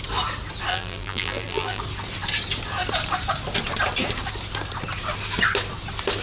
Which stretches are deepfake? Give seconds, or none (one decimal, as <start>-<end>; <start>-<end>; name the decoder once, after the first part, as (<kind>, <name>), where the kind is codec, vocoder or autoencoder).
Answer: 0.7-1.8 (vocoder, BigVGAN v2)